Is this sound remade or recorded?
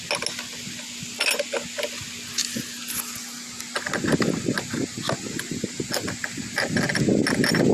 recorded